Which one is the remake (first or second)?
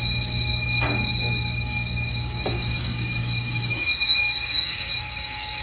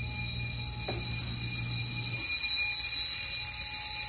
first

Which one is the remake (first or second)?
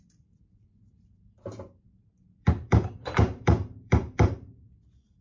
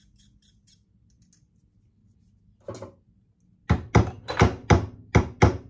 first